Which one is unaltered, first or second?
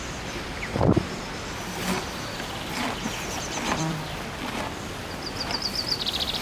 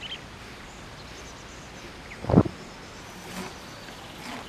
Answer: second